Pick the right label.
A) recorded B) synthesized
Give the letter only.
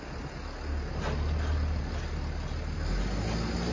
A